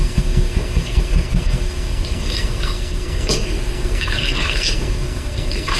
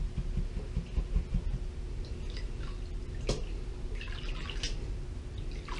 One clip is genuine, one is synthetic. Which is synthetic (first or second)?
first